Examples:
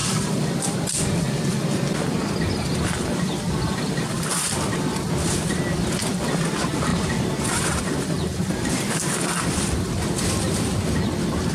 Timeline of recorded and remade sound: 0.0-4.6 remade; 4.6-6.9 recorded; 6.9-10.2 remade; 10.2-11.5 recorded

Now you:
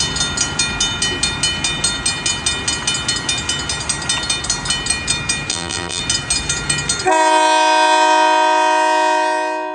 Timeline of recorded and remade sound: 0.0-5.5 recorded; 5.5-6.0 remade; 6.0-9.7 recorded

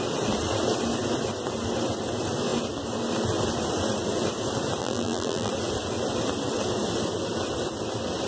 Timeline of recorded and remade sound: 0.0-4.8 recorded; 4.8-5.5 remade; 5.5-8.3 recorded

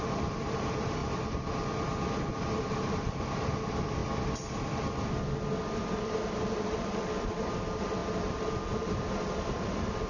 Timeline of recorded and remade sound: 0.0-1.0 remade; 1.0-2.5 recorded; 2.5-4.0 remade; 4.0-6.0 recorded; 6.0-10.1 remade

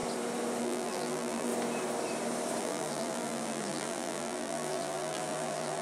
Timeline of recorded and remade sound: 0.0-0.6 recorded; 0.6-1.5 remade; 1.5-2.6 recorded; 2.6-5.8 remade

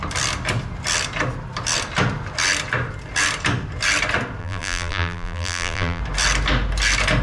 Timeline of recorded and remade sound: 0.0-4.4 recorded; 4.4-6.0 remade; 6.0-7.2 recorded

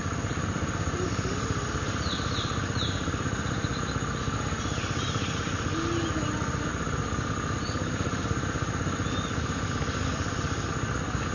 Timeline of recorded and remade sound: 0.0-6.7 recorded; 6.7-8.3 remade; 8.3-11.3 recorded

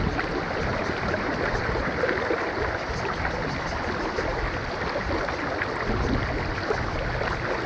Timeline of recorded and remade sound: 0.0-0.7 recorded; 0.7-1.6 remade; 1.6-7.7 recorded